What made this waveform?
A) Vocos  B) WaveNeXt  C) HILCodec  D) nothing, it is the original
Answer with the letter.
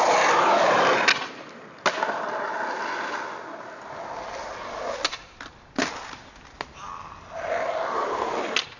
D